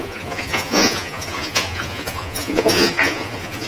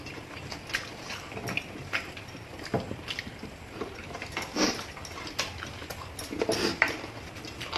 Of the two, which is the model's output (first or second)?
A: first